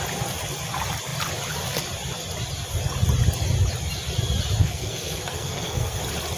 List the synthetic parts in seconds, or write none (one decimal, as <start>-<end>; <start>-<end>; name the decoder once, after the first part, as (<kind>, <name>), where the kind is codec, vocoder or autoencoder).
4.6-6.0 (codec, SNAC)